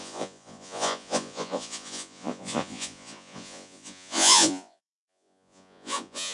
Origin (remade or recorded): remade